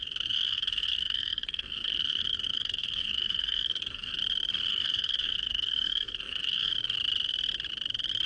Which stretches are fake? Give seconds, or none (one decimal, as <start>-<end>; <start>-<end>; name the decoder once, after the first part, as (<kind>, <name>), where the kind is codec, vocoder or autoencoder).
0.0-4.2 (codec, SNAC); 4.7-6.7